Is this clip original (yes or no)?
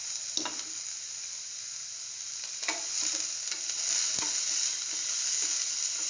yes